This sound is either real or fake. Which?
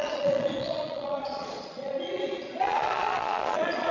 fake